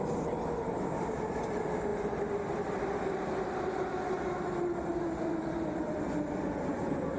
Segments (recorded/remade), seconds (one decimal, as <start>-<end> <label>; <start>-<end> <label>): 0.0-7.2 recorded